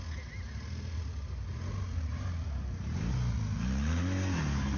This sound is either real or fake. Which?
real